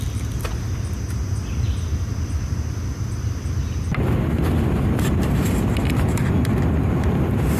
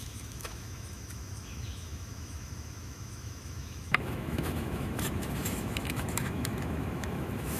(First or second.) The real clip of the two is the first